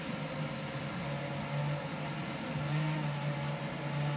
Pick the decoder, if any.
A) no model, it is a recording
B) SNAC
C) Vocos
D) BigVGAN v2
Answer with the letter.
A